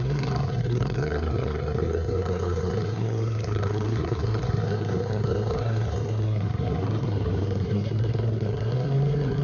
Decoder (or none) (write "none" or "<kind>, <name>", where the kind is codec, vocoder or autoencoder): codec, SNAC